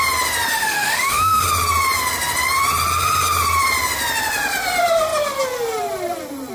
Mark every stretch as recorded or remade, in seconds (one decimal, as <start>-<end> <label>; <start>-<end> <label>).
0.0-0.5 recorded; 0.5-1.4 remade; 1.4-6.5 recorded